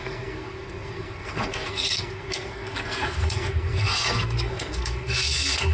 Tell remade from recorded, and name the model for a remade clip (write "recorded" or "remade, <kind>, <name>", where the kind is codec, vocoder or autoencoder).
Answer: remade, codec, SNAC